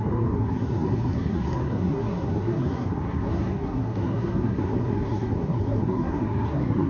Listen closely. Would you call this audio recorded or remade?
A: remade